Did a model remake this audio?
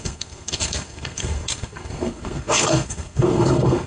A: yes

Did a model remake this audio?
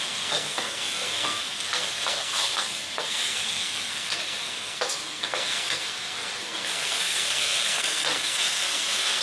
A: yes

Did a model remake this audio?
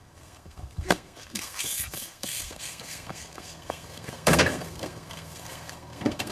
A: yes